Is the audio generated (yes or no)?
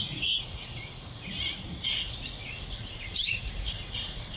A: yes